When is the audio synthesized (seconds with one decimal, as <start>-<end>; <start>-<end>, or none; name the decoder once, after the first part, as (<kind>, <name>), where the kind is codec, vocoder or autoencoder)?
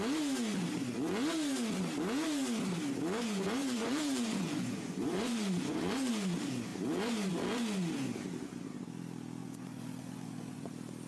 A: 3.6-6.1 (vocoder, Vocos); 9.4-10.7